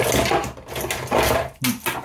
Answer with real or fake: real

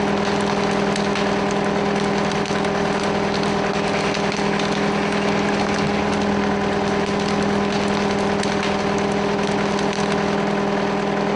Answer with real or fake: real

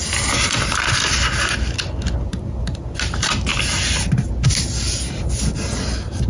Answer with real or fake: real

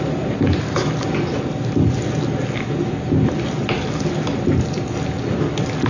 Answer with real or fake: real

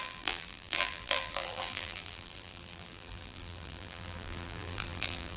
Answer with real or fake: fake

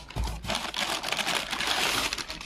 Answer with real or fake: real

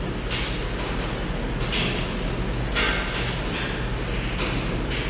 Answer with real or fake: real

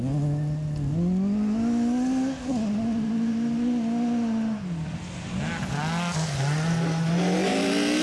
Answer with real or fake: real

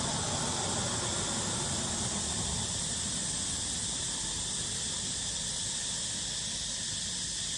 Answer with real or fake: real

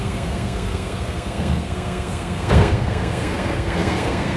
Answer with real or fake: fake